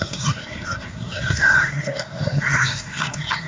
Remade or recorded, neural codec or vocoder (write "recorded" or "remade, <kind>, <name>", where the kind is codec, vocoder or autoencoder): remade, codec, SNAC